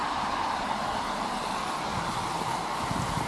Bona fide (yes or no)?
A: yes